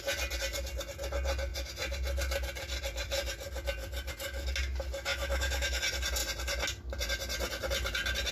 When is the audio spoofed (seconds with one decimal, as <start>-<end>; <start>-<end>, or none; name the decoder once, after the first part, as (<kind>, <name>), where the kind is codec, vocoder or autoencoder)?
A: 5.1-5.8 (autoencoder, DAC-VAE)